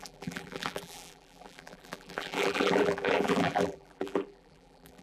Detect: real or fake fake